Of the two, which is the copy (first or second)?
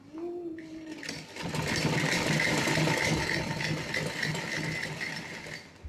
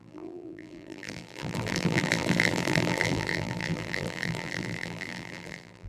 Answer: second